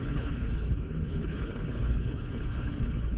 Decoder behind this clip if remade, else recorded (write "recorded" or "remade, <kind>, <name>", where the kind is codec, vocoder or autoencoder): remade, codec, HILCodec